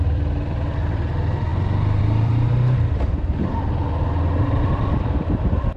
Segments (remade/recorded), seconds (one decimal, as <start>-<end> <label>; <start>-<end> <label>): 0.0-1.5 remade; 1.5-2.0 recorded; 2.0-3.8 remade; 3.8-4.6 recorded; 4.6-5.8 remade